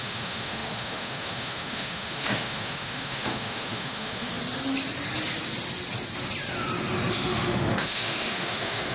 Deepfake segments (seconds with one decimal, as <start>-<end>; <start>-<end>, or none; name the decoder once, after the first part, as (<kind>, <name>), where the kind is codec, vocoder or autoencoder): 0.0-4.3 (autoencoder, DAC-VAE); 7.1-8.9